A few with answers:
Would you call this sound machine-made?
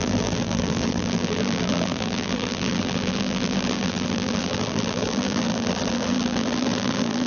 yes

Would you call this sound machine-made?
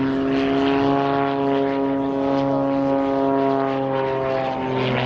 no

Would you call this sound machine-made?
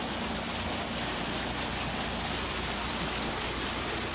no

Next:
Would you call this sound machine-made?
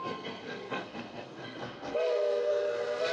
yes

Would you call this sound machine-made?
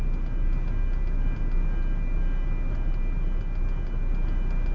no